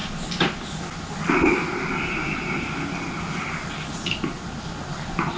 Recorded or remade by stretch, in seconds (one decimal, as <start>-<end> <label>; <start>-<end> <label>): 0.0-5.4 recorded